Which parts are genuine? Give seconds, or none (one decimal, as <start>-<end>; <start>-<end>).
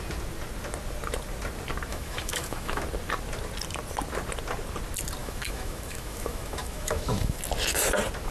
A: 0.0-1.9; 2.8-5.2; 7.4-8.3